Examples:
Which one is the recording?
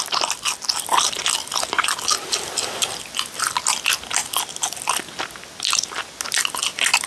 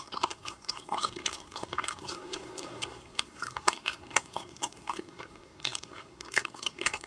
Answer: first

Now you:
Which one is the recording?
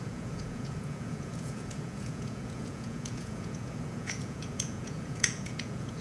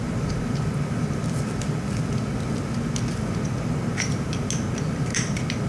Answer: second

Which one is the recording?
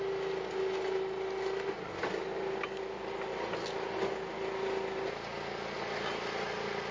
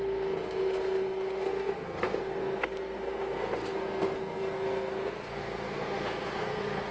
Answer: first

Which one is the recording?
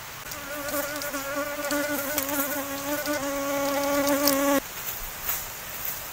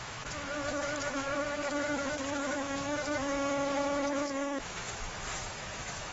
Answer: first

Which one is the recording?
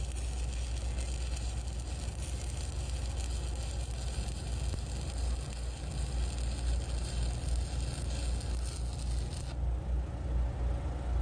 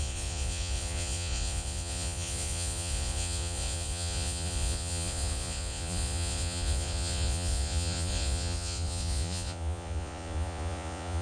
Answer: first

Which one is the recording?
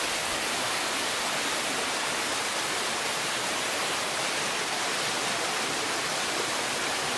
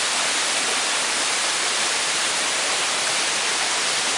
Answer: first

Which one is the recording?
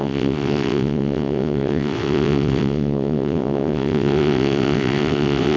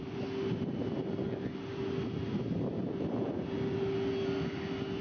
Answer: second